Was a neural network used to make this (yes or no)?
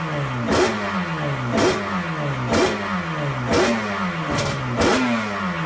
no